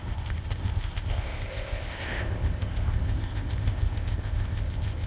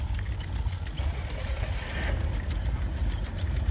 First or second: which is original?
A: second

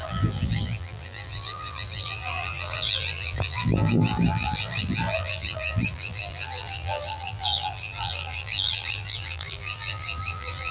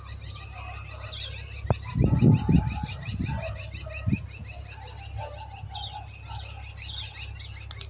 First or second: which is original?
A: second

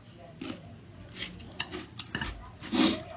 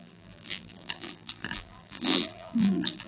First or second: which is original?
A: first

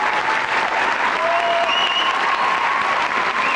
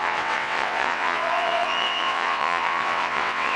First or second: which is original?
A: first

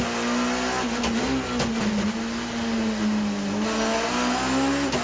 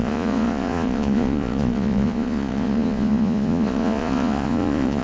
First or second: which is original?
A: first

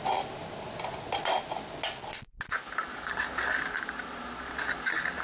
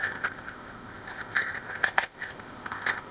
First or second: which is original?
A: first